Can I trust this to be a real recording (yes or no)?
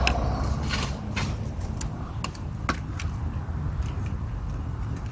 yes